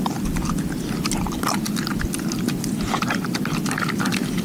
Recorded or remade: recorded